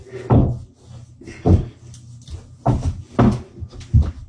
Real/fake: real